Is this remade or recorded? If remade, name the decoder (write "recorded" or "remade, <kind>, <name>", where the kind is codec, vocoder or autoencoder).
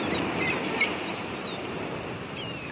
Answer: recorded